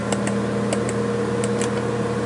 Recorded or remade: recorded